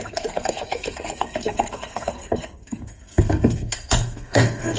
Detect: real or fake fake